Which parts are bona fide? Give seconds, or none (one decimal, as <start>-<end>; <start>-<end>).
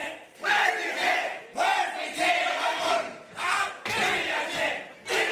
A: 0.7-2.5; 3.7-5.3